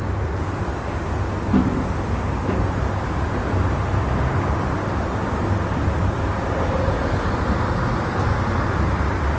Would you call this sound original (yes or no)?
yes